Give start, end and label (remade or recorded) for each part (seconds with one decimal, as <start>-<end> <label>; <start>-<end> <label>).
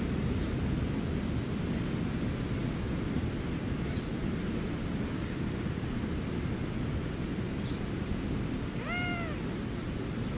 0.0-10.4 recorded